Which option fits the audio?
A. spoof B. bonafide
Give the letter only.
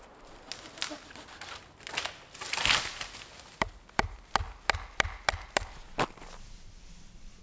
B